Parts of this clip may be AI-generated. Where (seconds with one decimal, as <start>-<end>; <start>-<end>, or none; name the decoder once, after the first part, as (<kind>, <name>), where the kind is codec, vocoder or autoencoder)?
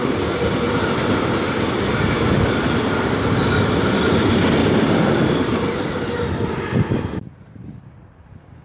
none